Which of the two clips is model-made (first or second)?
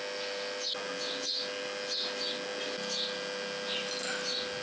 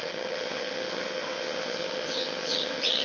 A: second